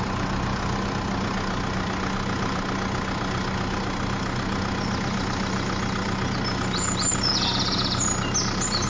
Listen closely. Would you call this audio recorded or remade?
recorded